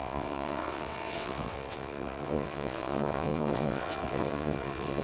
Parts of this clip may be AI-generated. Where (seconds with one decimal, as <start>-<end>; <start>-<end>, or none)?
0.0-5.0